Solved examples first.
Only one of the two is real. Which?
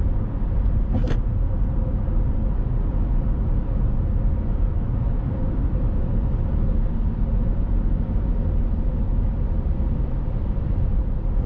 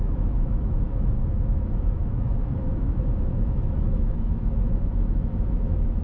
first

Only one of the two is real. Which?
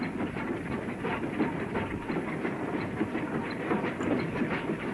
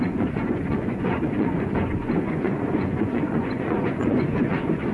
first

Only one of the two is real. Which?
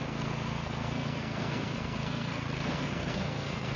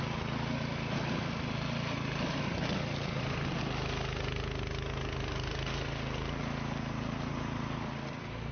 second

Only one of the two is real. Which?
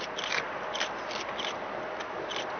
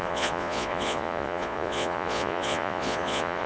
first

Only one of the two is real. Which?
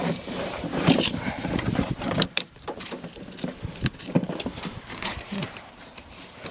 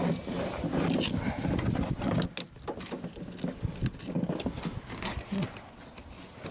second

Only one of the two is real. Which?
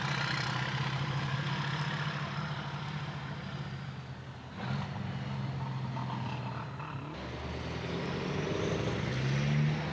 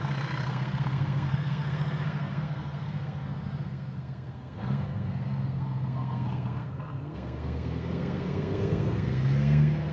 first